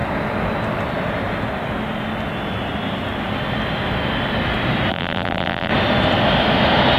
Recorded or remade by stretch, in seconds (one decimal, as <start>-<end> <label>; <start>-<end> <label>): 0.0-4.9 recorded; 4.9-5.7 remade; 5.7-7.0 recorded